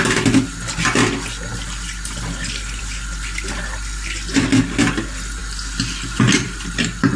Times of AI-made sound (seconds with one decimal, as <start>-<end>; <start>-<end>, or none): 1.5-2.8; 5.4-7.2

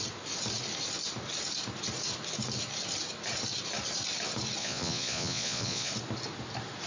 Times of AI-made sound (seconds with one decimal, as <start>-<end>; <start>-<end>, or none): 4.6-5.9

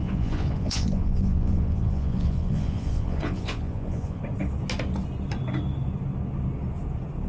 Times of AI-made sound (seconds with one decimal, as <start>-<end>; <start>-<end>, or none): 0.0-4.2

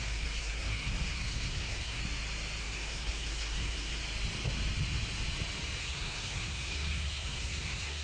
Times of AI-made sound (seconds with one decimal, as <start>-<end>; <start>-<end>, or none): 0.0-2.0; 2.6-4.0; 5.8-8.0

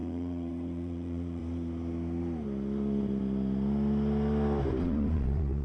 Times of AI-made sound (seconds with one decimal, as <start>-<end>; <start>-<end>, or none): 0.0-1.4; 4.8-5.6

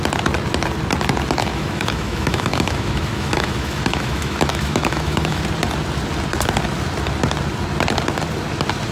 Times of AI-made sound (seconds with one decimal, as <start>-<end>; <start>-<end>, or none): 1.4-5.4